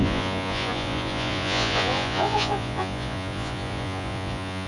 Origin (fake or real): fake